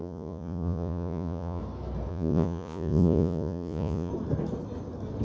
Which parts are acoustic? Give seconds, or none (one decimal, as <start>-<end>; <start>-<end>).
1.6-2.1; 4.1-5.2

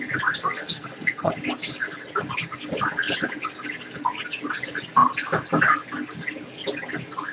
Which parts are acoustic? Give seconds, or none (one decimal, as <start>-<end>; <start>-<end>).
0.0-0.4; 1.3-7.3

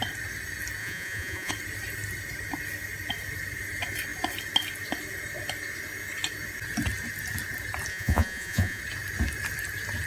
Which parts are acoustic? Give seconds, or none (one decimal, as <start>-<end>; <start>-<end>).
0.0-0.8; 1.5-7.9; 8.8-10.1